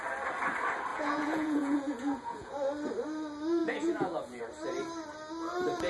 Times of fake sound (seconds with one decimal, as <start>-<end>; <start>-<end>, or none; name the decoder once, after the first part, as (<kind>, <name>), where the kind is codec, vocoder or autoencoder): 0.9-2.5 (vocoder, Vocos); 3.6-4.4